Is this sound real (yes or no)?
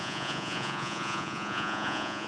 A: no